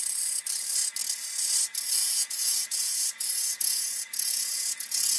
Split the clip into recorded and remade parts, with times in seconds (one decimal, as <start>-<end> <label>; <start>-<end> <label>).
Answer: 0.0-2.0 recorded; 2.0-5.2 remade